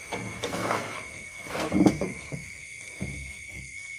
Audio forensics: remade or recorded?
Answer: remade